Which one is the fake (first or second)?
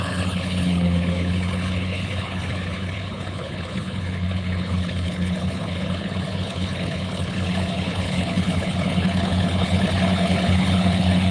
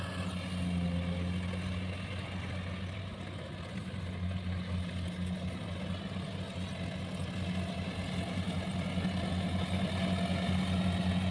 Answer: first